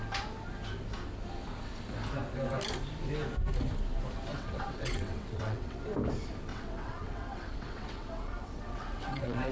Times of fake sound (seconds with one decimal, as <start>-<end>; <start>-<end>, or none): 4.3-5.8; 6.5-9.5